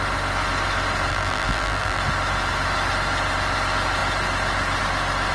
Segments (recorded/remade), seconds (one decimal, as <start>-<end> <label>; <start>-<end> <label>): 0.0-1.1 recorded; 1.1-2.0 remade; 2.0-5.3 recorded